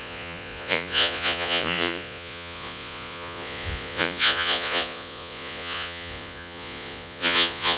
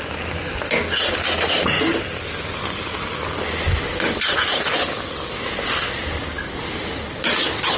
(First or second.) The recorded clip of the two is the second